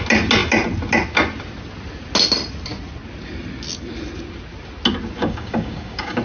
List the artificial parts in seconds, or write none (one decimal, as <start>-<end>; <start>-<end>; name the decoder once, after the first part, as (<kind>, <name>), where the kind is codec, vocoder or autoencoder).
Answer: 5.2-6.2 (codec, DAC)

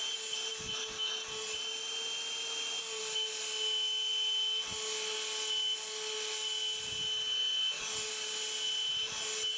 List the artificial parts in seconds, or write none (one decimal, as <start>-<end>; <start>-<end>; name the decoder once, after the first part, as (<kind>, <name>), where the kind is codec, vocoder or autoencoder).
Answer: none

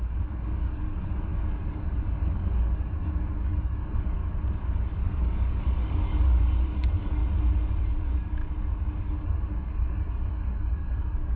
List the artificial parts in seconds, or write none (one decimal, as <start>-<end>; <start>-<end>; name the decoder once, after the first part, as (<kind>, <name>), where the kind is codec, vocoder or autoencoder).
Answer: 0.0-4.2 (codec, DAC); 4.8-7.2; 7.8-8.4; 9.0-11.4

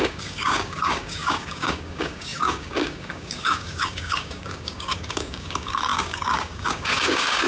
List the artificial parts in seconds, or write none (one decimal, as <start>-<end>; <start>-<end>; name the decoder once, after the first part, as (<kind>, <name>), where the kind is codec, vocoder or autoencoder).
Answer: 0.0-7.5 (codec, DAC)

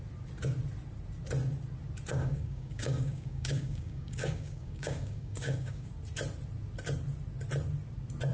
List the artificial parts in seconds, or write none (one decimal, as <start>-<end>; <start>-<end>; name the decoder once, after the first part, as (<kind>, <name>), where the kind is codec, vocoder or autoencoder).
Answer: 2.1-5.9 (codec, DAC)

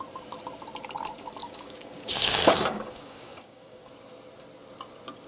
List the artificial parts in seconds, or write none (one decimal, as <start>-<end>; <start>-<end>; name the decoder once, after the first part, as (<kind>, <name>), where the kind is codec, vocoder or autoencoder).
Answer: 1.4-3.9 (codec, DAC)

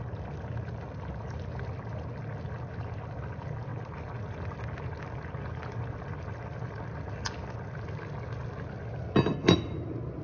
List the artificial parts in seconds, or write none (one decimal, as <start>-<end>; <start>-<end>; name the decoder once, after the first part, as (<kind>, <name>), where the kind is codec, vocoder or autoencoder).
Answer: none

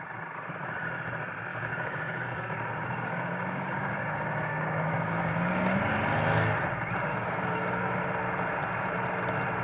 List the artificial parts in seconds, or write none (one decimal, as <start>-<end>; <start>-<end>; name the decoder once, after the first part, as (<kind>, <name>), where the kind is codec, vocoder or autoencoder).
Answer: 1.5-5.9 (codec, DAC); 7.1-8.0